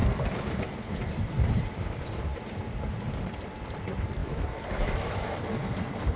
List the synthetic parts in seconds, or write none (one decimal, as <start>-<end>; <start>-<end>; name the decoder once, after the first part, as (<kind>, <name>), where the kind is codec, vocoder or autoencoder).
4.2-5.4 (autoencoder, DAC-VAE)